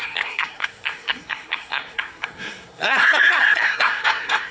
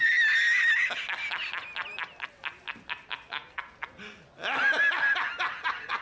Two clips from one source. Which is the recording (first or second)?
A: second